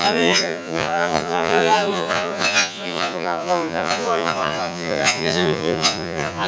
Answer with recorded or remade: remade